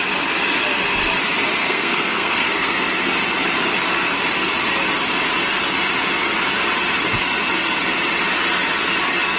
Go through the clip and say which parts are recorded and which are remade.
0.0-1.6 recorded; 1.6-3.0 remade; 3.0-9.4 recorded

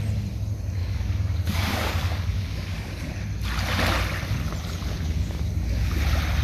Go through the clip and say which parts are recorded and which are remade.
0.0-0.8 recorded; 0.8-3.1 remade; 3.1-4.8 recorded; 4.8-6.0 remade; 6.0-6.4 recorded

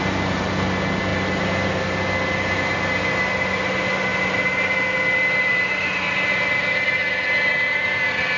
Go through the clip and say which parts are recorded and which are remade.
0.0-8.4 recorded

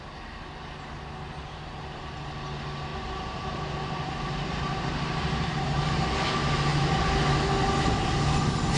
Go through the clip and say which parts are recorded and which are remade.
0.0-2.9 recorded; 2.9-6.2 remade; 6.2-8.8 recorded

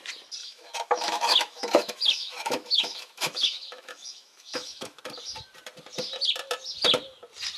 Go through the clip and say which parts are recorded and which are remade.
0.0-0.4 recorded; 0.4-5.0 remade; 5.0-7.6 recorded

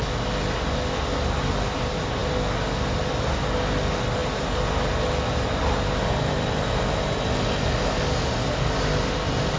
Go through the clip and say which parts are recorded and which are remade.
0.0-9.6 recorded

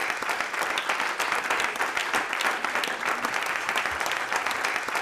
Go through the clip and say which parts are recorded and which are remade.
0.0-5.0 recorded